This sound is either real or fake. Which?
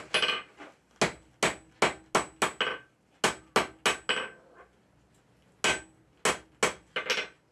real